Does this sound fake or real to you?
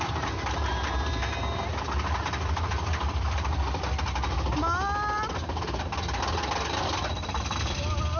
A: real